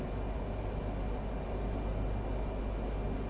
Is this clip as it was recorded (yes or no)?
yes